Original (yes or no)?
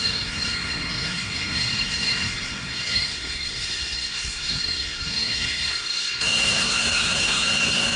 no